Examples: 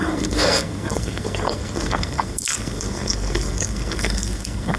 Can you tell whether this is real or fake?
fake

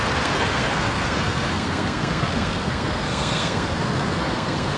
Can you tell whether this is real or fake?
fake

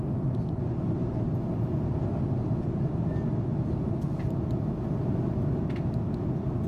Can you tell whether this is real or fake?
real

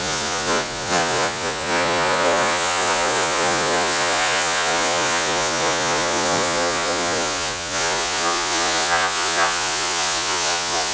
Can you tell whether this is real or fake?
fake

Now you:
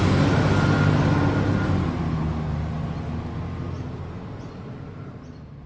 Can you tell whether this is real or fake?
real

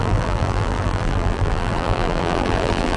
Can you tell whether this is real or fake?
fake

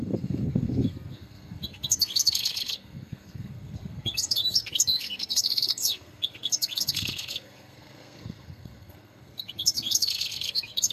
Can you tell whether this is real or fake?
fake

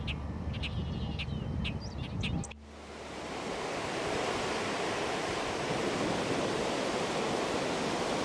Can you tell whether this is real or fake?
real